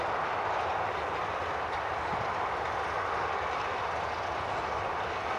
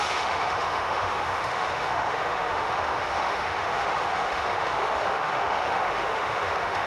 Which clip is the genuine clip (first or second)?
first